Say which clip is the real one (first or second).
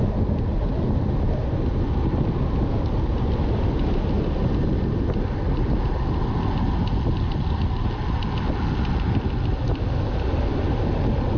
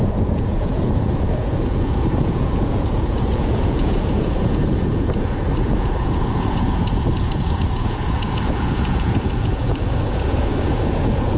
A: first